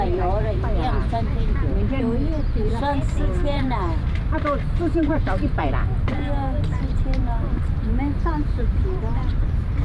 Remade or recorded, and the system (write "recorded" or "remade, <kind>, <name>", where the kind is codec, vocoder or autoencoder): remade, vocoder, BigVGAN v2